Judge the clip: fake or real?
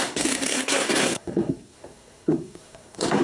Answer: fake